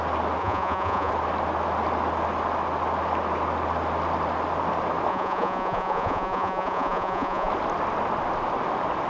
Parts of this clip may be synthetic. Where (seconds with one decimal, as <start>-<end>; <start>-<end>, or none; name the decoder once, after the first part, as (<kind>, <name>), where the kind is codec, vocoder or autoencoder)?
0.4-1.1 (vocoder, Vocos); 5.1-7.5